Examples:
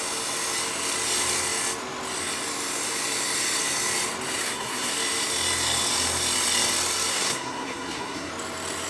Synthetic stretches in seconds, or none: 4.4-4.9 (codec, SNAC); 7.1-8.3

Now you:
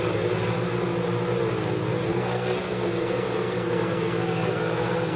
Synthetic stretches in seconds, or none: 2.1-5.2 (codec, SNAC)

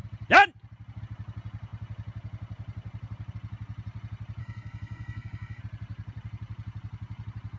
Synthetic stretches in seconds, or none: 4.4-5.6 (codec, SNAC)